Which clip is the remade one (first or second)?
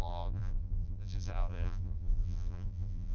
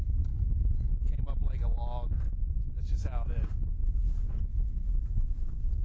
first